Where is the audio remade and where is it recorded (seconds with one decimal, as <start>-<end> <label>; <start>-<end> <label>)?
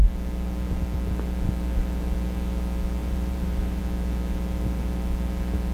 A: 0.0-3.0 recorded; 3.0-3.8 remade; 3.8-5.7 recorded